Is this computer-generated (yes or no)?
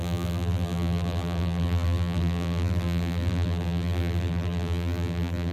yes